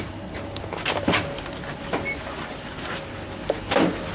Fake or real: real